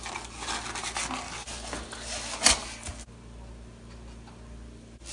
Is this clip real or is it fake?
real